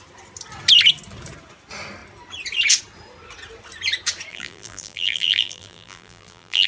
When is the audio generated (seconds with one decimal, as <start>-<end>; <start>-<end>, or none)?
4.3-6.7